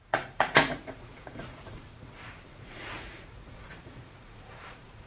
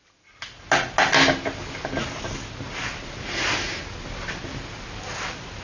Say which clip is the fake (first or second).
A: first